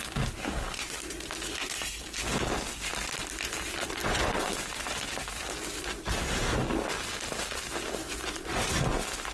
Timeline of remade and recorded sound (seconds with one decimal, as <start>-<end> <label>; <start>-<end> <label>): 0.0-4.0 recorded; 4.0-4.5 remade; 4.5-8.0 recorded; 8.0-8.6 remade; 8.6-9.3 recorded